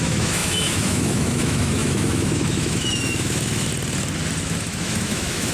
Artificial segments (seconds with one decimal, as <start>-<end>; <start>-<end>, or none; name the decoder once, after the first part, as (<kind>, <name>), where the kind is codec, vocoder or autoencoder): 0.0-3.7 (autoencoder, DAC-VAE); 4.4-5.5

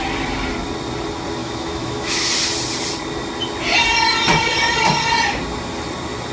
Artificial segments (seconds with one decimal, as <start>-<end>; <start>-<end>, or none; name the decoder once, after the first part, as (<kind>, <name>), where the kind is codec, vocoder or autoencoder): 1.4-2.3 (autoencoder, DAC-VAE)

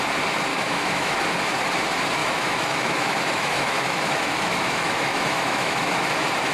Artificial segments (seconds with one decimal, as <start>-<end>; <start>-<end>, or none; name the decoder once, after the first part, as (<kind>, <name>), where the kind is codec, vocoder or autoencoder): 0.5-1.2 (autoencoder, DAC-VAE); 2.2-6.1